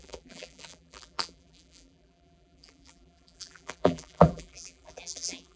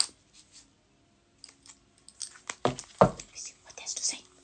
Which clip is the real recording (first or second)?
second